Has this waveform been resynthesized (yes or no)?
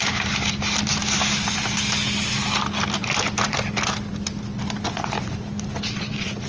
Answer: no